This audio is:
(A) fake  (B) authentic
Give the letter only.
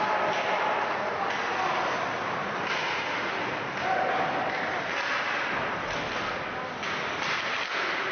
B